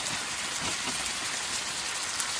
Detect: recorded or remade recorded